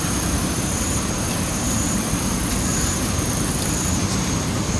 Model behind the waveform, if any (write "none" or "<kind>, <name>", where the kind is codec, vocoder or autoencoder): vocoder, BigVGAN v2